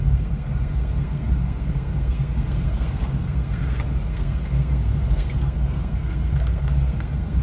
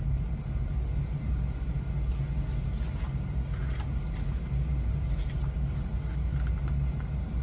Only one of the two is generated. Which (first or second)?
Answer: first